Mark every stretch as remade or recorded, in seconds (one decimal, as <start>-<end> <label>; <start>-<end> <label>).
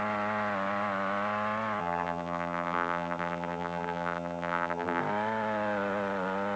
0.0-1.8 recorded; 1.8-5.0 remade; 5.0-6.6 recorded